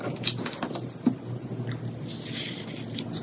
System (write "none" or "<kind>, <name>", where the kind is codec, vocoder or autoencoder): none